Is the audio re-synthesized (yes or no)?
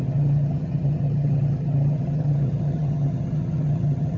yes